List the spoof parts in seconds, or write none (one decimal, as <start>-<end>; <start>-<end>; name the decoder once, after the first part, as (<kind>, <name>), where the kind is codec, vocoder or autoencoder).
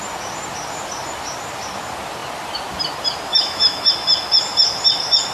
3.3-3.9 (autoencoder, DAC-VAE)